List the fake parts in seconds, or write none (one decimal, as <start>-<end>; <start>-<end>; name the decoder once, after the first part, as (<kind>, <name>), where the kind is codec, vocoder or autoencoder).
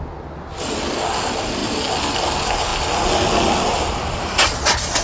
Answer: none